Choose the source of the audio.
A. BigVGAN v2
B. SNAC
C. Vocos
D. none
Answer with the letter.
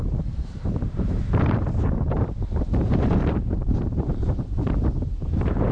A